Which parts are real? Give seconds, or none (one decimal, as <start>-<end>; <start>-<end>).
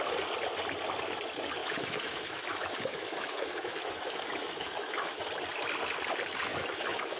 0.0-1.6; 5.2-6.5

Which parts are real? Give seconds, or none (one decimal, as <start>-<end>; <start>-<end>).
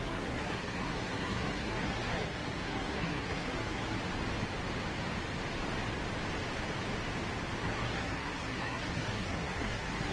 4.0-7.6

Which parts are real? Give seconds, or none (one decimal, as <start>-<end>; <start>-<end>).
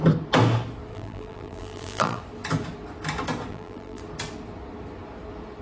0.0-0.9; 2.2-3.5; 4.0-5.6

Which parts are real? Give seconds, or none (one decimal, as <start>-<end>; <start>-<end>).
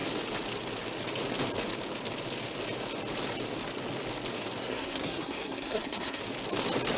0.0-4.6; 6.2-7.0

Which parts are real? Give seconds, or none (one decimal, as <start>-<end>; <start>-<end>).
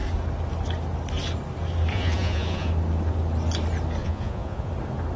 0.0-1.9; 2.7-4.0; 4.7-5.2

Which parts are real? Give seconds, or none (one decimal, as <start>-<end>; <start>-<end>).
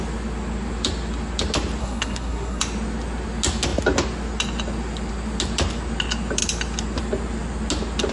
0.0-1.8; 2.6-8.1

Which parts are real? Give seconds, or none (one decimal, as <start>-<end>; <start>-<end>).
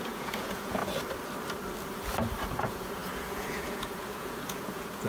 0.8-2.6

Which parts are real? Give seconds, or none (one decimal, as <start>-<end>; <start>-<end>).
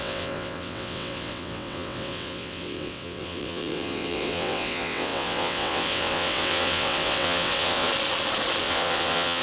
7.9-8.6